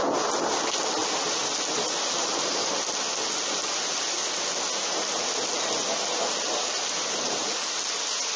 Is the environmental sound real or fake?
real